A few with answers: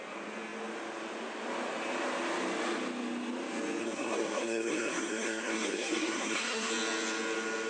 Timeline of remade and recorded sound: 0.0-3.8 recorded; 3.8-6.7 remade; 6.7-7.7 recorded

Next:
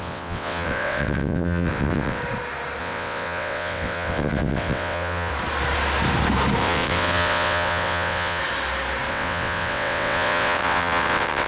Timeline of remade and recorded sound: 0.0-2.2 remade; 2.2-2.8 recorded; 2.8-5.3 remade; 5.3-6.6 recorded; 6.6-8.4 remade; 8.4-9.1 recorded; 9.1-11.5 remade

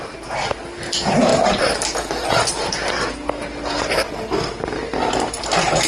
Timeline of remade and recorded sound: 0.0-1.3 remade; 1.3-2.7 recorded; 2.7-4.9 remade; 4.9-5.4 recorded; 5.4-5.9 remade